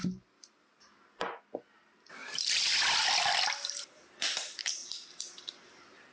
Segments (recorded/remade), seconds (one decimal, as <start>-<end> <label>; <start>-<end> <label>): 0.0-2.2 recorded; 2.2-3.1 remade; 3.1-4.8 recorded; 4.8-6.1 remade